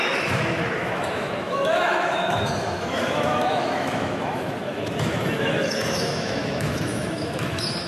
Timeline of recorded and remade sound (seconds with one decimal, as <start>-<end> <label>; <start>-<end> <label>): 0.0-7.9 remade